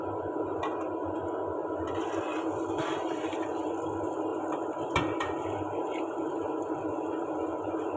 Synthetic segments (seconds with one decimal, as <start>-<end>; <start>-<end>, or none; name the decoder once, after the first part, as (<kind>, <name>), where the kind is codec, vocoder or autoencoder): none